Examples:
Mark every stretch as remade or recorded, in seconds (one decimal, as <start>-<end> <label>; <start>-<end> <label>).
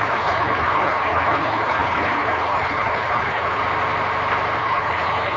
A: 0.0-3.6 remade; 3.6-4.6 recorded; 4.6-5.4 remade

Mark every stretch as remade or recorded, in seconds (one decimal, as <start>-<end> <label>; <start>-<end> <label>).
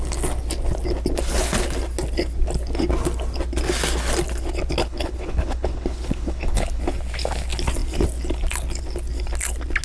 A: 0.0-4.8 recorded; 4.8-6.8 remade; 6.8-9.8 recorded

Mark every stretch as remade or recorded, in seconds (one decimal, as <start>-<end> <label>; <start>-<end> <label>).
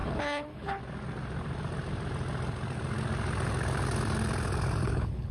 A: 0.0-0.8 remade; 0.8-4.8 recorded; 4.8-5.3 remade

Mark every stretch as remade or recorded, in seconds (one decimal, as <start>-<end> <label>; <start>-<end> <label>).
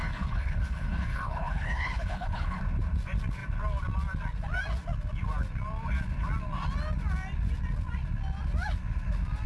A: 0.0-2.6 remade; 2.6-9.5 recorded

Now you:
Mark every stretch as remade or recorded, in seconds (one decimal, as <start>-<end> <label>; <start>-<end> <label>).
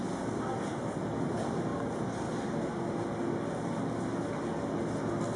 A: 0.0-5.4 recorded